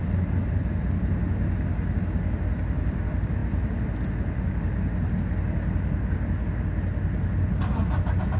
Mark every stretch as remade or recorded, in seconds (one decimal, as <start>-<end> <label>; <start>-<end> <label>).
0.0-8.4 recorded